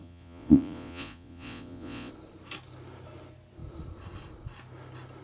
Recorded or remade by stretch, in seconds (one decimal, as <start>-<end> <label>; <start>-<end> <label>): 0.0-2.1 remade; 2.1-5.2 recorded